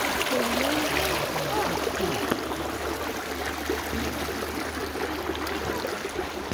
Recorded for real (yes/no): yes